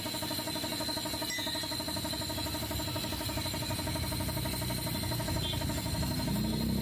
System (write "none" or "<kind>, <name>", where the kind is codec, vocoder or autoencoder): none